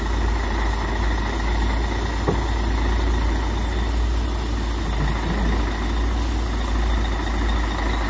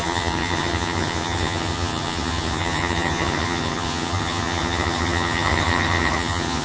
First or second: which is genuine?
first